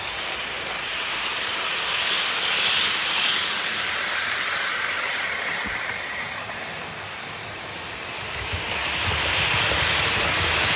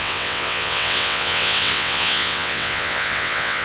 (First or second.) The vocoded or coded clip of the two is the second